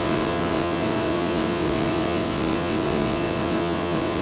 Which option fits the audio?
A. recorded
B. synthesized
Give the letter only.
B